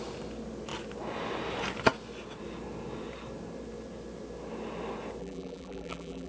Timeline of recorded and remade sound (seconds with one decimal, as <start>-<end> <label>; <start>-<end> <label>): 0.0-5.2 recorded; 5.2-6.3 remade

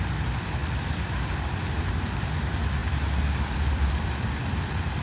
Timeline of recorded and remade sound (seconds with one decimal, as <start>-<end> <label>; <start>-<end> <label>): 0.0-0.6 recorded; 0.6-1.9 remade; 1.9-2.8 recorded; 2.8-3.9 remade; 3.9-5.0 recorded

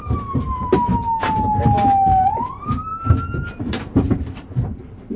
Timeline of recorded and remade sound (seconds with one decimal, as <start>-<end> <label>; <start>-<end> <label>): 0.0-0.9 remade; 0.9-2.3 recorded; 2.3-2.9 remade; 2.9-3.6 recorded; 3.6-5.2 remade

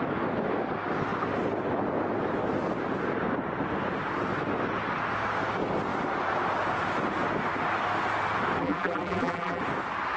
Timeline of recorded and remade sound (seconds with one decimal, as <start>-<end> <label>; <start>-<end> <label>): 0.0-8.6 recorded; 8.6-9.6 remade; 9.6-10.2 recorded